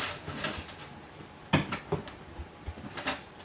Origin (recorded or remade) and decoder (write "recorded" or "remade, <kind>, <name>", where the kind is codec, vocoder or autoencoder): recorded